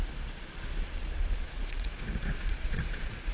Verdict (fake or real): fake